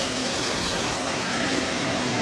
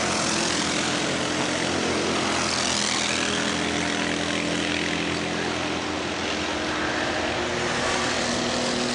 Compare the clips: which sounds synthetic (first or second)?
first